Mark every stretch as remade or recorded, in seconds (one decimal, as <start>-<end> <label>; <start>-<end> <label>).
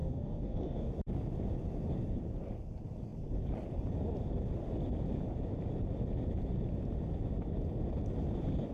0.0-0.9 remade; 0.9-8.7 recorded